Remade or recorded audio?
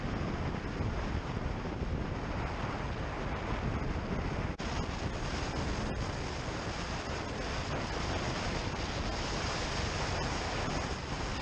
recorded